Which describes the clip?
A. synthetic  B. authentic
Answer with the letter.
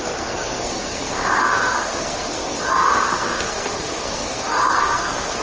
A